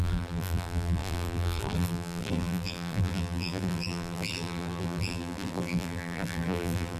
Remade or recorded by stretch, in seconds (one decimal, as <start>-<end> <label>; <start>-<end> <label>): 0.0-7.0 remade